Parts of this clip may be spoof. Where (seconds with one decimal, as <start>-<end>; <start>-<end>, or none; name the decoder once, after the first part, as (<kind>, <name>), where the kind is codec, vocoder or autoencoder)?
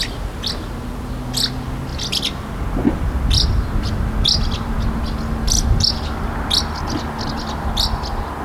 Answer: none